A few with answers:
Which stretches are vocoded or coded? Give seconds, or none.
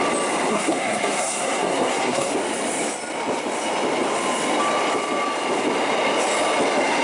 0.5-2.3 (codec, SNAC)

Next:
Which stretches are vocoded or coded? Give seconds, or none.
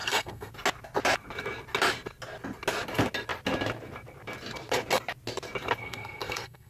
0.0-0.5 (codec, SNAC); 5.8-6.7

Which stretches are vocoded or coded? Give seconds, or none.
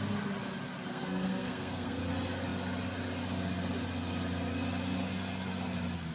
0.9-2.0 (codec, SNAC)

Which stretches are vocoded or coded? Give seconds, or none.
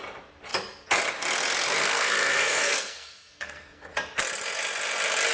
1.8-3.9 (codec, SNAC)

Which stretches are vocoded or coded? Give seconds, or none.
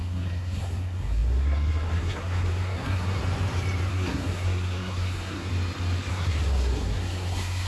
0.0-3.2 (codec, SNAC); 3.9-5.5; 6.1-7.7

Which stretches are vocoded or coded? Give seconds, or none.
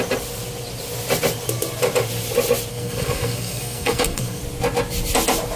2.7-4.4 (codec, SNAC)